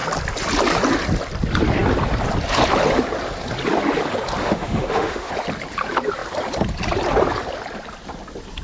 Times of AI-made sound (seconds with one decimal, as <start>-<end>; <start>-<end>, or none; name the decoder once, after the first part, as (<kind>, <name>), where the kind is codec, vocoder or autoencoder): 4.4-5.3 (autoencoder, DAC-VAE)